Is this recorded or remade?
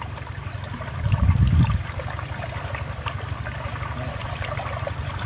recorded